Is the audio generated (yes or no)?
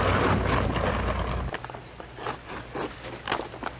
no